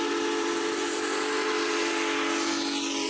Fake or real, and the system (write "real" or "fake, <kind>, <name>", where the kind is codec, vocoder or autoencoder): real